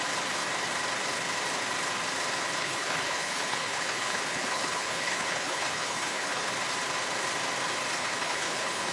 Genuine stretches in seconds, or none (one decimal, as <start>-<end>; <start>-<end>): 0.0-2.6; 6.5-8.0